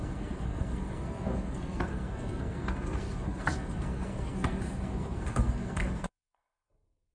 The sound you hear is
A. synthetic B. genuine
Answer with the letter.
A